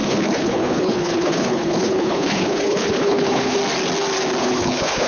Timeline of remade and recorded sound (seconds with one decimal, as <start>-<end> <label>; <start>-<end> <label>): 0.0-3.6 remade; 3.6-4.4 recorded; 4.4-5.1 remade